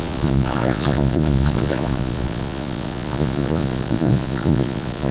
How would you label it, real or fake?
fake